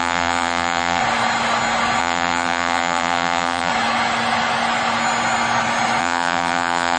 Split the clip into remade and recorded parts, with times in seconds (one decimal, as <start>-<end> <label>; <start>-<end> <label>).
0.0-1.0 remade; 1.0-2.0 recorded; 2.0-3.7 remade; 3.7-6.0 recorded; 6.0-7.0 remade

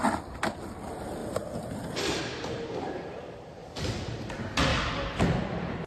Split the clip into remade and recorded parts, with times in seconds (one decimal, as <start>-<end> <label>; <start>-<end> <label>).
0.0-1.2 recorded; 1.2-2.2 remade; 2.2-3.6 recorded; 3.6-4.3 remade; 4.3-5.9 recorded

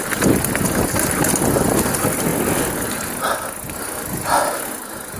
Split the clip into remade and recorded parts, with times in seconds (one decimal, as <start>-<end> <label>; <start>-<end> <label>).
0.0-5.2 recorded

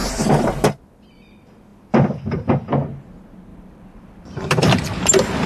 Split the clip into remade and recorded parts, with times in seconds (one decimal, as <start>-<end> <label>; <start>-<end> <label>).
0.0-3.5 recorded; 3.5-5.5 remade

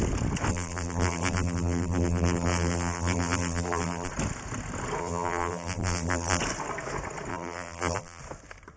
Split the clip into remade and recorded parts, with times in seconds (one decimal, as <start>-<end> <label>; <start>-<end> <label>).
0.0-0.5 recorded; 0.5-4.1 remade; 4.1-5.0 recorded; 5.0-6.4 remade; 6.4-7.3 recorded; 7.3-8.2 remade; 8.2-8.8 recorded

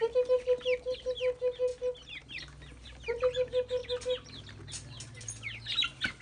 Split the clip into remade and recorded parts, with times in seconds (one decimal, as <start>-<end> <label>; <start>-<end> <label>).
0.0-3.8 recorded; 3.8-4.4 remade; 4.4-6.2 recorded

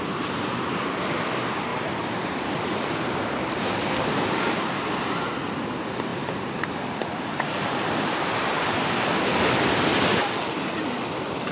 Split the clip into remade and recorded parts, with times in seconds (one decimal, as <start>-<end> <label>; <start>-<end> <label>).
0.0-1.7 recorded; 1.7-3.0 remade; 3.0-6.1 recorded; 6.1-8.8 remade; 8.8-11.5 recorded